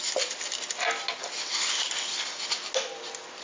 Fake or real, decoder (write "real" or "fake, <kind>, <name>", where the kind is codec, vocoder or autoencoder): real